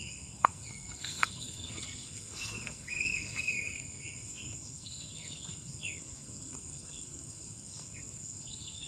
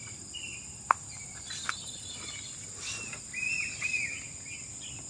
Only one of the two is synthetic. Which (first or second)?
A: first